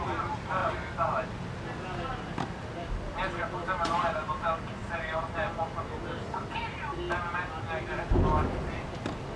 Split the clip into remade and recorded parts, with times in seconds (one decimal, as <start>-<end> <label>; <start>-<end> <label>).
0.0-0.6 recorded; 0.6-1.3 remade; 1.3-4.8 recorded; 4.8-5.6 remade; 5.6-9.4 recorded